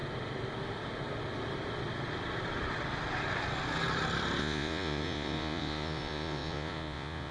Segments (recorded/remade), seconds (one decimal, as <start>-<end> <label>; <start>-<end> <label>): 0.0-4.4 recorded; 4.4-7.3 remade